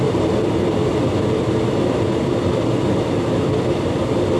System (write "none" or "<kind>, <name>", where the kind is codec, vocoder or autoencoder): none